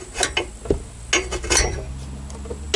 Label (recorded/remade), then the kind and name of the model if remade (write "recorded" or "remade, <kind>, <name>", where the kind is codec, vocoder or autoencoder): recorded